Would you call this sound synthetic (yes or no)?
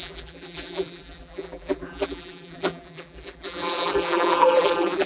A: yes